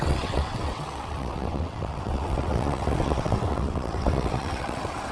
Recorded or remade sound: remade